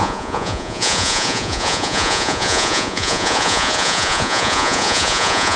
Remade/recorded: remade